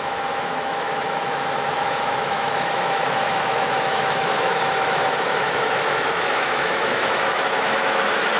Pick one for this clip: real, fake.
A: fake